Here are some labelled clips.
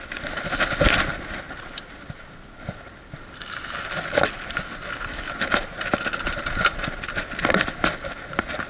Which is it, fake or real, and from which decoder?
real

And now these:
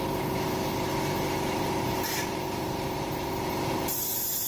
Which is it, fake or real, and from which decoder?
fake, vocoder, BigVGAN v2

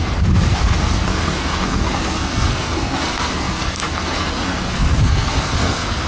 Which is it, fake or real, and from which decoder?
fake, codec, SNAC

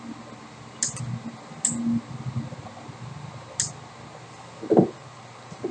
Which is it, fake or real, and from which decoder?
real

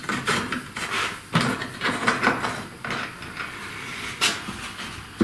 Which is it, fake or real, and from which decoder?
real